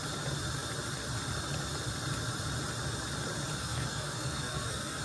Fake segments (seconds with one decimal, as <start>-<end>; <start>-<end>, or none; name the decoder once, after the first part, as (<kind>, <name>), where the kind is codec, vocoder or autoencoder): 3.6-5.0 (codec, SNAC)